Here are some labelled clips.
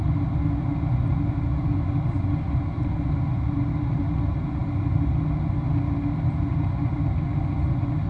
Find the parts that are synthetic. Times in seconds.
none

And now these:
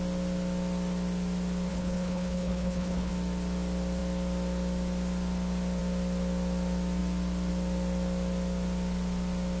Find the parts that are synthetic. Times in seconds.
1.7-3.1 (codec, HILCodec)

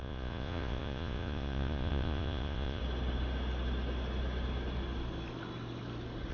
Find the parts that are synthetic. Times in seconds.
0.0-2.8 (vocoder, Vocos)

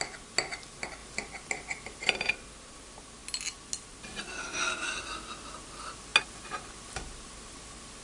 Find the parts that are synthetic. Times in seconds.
none